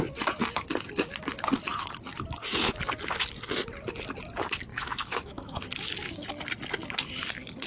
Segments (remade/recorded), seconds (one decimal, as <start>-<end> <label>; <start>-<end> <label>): 0.0-4.7 recorded; 4.7-5.6 remade; 5.6-7.7 recorded